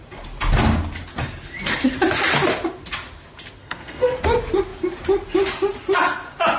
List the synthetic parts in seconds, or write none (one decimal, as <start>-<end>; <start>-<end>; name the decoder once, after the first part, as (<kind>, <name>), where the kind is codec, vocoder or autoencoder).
3.6-4.2 (codec, SNAC)